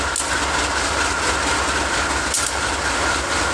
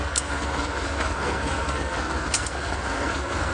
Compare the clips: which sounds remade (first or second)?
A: second